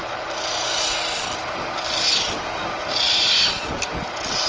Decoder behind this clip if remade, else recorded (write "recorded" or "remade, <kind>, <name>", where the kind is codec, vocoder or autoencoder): recorded